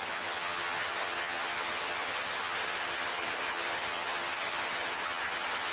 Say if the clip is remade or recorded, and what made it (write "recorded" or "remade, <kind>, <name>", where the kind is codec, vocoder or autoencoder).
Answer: remade, vocoder, HiFi-GAN